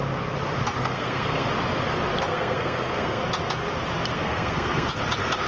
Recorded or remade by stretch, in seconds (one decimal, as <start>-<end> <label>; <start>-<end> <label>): 0.0-0.8 recorded; 0.8-1.5 remade; 1.5-2.3 recorded; 2.3-3.2 remade; 3.2-4.1 recorded; 4.1-4.9 remade; 4.9-5.5 recorded